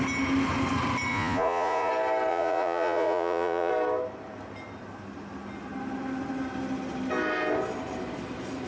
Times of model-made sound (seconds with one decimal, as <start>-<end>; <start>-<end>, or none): 1.1-1.9; 2.3-3.7